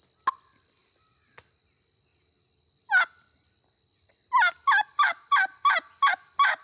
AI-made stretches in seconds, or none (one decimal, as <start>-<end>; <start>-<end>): none